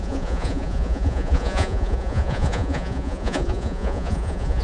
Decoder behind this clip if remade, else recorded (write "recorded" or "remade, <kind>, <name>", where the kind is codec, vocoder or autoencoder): remade, vocoder, Vocos